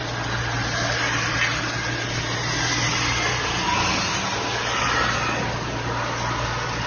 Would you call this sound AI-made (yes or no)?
no